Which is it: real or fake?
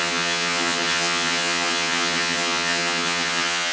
fake